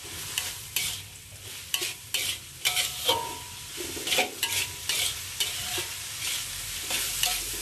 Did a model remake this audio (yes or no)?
no